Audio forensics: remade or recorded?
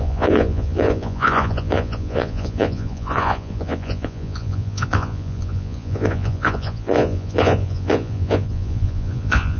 remade